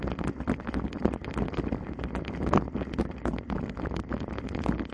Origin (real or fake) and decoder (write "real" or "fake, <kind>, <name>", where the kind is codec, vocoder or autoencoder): real